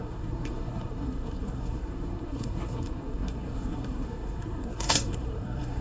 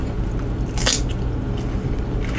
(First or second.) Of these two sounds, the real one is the second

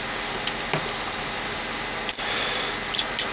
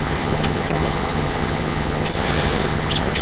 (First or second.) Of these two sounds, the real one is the first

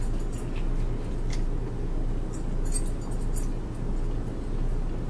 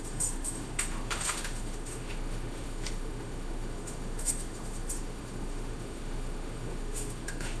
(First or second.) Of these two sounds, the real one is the first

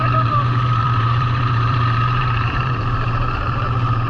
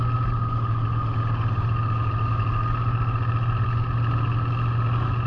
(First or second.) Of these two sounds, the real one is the second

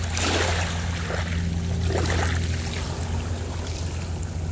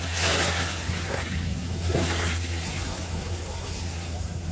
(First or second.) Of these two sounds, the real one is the first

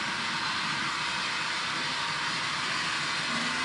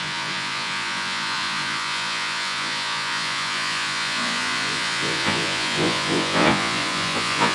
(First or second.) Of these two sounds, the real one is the first